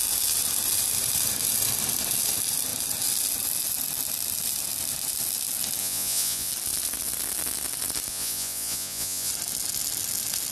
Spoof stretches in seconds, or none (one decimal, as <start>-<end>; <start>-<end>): 5.8-6.5; 8.1-9.3